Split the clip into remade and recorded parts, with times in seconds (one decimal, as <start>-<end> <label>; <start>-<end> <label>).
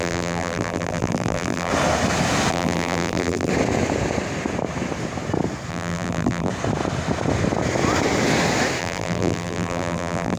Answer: 0.0-1.7 remade; 1.7-2.5 recorded; 2.5-3.5 remade; 3.5-5.7 recorded; 5.7-6.5 remade; 6.5-8.8 recorded; 8.8-10.4 remade